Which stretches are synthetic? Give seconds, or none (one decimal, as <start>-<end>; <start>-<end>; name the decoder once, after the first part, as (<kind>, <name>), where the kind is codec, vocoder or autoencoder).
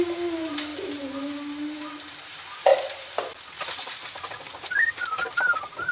0.0-2.7 (vocoder, BigVGAN v2); 4.9-5.9